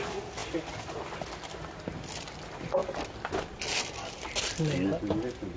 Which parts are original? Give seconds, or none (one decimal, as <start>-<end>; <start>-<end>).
0.0-5.6